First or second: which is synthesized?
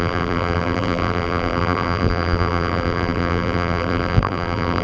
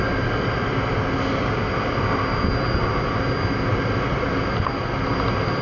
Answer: first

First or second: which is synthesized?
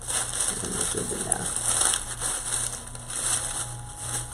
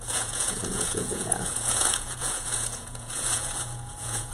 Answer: second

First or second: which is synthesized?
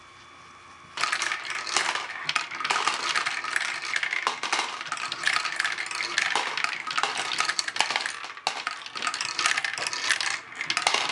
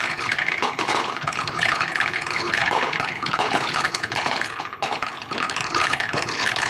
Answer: second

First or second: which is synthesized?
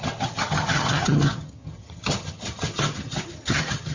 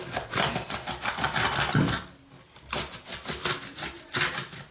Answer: first